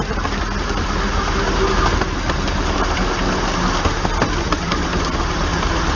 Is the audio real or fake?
real